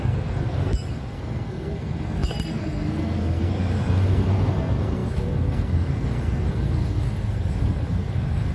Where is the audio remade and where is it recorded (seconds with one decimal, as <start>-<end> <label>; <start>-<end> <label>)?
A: 0.0-8.5 remade